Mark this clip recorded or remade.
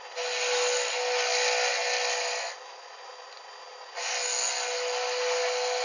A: recorded